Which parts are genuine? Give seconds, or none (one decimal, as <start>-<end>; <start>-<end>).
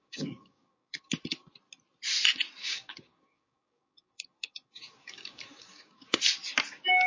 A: 1.2-2.6; 6.2-7.1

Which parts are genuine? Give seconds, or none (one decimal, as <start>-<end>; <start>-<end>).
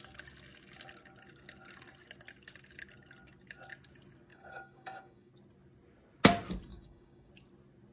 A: 0.0-4.3; 5.3-6.7; 7.3-7.9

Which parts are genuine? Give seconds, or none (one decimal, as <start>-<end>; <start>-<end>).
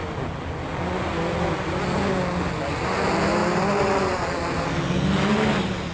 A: 0.0-5.9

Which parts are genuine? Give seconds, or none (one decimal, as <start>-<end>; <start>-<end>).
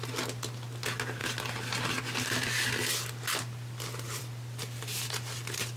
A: 0.0-5.8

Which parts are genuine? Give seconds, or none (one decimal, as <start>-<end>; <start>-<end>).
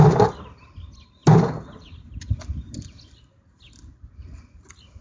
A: 0.0-5.0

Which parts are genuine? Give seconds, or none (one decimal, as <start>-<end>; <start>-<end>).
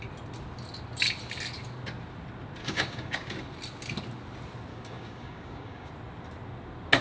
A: 0.0-2.6; 3.3-4.7; 5.9-7.0